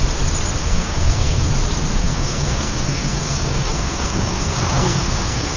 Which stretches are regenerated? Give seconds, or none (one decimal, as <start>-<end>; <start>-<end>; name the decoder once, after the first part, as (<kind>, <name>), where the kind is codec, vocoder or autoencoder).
0.6-1.5 (codec, SNAC); 2.0-5.6